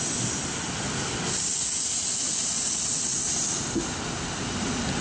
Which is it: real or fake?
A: real